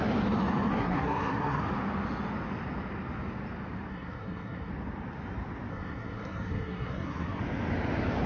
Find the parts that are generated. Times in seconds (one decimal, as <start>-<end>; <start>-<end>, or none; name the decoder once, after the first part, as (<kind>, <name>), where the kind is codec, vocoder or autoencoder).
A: 0.7-1.6 (codec, SNAC); 3.9-4.7; 5.7-7.4